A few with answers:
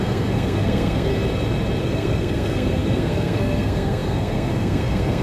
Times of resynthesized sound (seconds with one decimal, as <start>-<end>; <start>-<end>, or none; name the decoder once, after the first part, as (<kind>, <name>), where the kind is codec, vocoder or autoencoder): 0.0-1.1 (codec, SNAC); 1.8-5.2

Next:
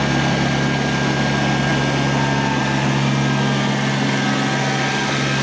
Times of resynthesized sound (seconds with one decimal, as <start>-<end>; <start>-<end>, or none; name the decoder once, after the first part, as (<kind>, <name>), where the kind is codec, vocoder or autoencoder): none

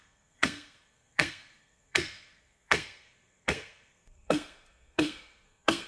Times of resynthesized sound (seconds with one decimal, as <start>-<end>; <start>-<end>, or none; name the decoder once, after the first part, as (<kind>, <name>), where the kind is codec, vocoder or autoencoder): 0.0-5.9 (codec, SNAC)

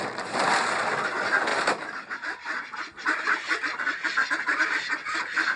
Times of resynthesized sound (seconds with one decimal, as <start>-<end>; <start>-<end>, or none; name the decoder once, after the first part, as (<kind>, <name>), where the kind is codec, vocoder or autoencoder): 1.5-4.9 (vocoder, BigVGAN v2)

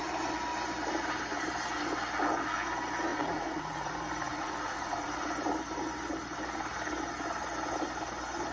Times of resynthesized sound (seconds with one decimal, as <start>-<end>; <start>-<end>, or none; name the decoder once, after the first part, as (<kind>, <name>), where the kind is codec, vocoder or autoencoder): 3.1-3.9 (vocoder, Vocos); 4.3-5.1

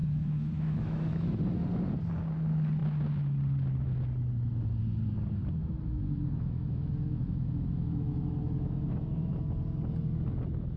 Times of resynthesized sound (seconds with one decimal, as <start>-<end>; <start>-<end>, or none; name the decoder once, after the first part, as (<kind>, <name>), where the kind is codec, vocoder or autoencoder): 0.0-1.4 (autoencoder, DAC-VAE); 5.6-9.3

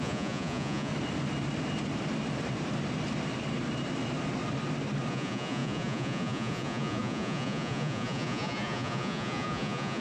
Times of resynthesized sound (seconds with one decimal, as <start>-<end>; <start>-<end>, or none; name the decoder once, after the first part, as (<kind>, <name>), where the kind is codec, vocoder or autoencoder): 0.0-0.9 (vocoder, Vocos); 5.1-10.0

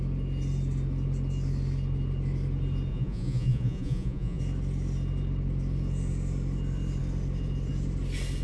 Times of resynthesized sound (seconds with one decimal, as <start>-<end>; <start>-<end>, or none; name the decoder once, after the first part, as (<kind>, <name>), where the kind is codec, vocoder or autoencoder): 2.9-4.4 (vocoder, Vocos)